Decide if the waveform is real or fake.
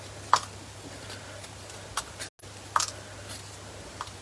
real